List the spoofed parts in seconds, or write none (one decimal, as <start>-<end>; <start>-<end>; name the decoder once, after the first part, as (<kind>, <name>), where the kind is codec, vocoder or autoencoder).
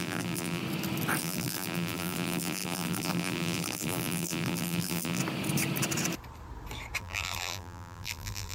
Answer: 0.0-0.6 (vocoder, BigVGAN v2); 1.2-5.2; 7.0-8.5